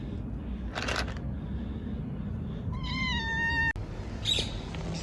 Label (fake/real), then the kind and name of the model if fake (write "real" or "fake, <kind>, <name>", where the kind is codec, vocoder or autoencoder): real